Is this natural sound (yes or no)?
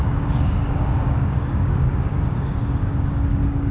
no